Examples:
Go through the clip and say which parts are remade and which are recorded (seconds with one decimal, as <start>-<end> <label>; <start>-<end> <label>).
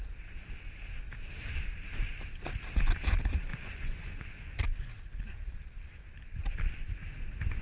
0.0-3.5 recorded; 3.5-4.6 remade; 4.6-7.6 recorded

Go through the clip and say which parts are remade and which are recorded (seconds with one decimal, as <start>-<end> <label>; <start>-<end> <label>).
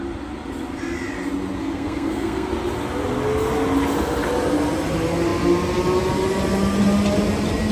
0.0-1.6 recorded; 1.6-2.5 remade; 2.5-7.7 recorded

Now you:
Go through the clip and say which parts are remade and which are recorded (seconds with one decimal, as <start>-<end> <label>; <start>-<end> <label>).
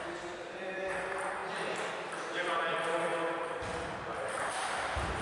0.0-1.4 remade; 1.4-1.9 recorded; 1.9-3.1 remade; 3.1-4.5 recorded; 4.5-5.2 remade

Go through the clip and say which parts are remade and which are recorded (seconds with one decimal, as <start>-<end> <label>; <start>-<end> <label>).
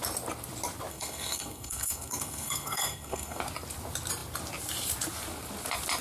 0.0-0.9 recorded; 0.9-3.4 remade; 3.4-6.0 recorded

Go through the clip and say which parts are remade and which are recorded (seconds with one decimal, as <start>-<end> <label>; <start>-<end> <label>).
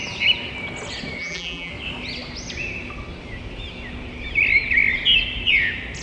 0.0-1.2 recorded; 1.2-1.7 remade; 1.7-6.0 recorded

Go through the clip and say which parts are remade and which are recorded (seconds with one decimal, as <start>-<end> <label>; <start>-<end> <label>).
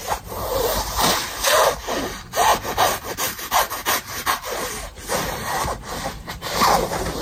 0.0-1.3 remade; 1.3-2.0 recorded; 2.0-7.2 remade